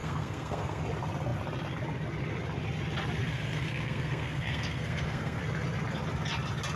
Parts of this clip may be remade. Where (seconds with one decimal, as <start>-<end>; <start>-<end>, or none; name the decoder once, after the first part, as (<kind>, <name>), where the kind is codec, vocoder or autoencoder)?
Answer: 0.0-0.8 (codec, SNAC); 3.2-5.4